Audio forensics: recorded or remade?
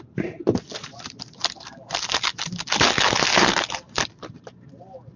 recorded